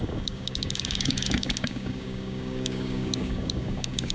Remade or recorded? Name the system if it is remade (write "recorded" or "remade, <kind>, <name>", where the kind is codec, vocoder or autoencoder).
remade, codec, DAC